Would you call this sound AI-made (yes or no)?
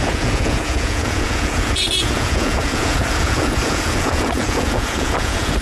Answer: yes